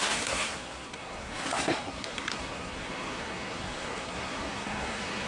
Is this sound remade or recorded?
remade